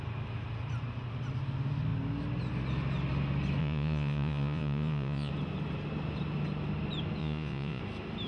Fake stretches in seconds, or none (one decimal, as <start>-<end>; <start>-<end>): 3.6-5.3; 7.2-7.8